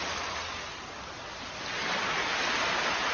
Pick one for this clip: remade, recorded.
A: recorded